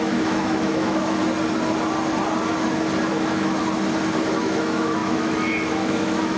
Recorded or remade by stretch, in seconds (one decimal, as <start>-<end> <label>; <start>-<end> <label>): 0.0-1.2 remade; 1.2-3.1 recorded; 3.1-3.6 remade; 3.6-4.4 recorded; 4.4-6.4 remade

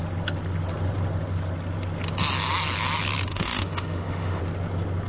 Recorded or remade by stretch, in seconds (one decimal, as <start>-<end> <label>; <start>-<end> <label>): 0.0-3.3 recorded; 3.3-4.4 remade; 4.4-5.1 recorded

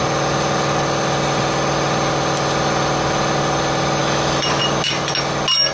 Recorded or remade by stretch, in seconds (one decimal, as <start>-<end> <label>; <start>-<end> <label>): 0.0-4.0 recorded; 4.0-4.6 remade; 4.6-5.7 recorded

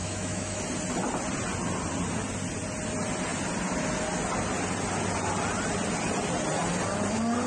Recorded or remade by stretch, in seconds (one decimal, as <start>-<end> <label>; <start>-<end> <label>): 0.0-0.6 remade; 0.6-7.5 recorded